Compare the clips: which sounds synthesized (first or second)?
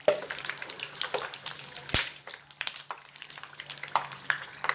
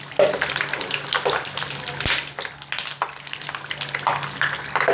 first